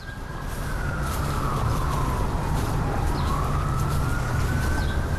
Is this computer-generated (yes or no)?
no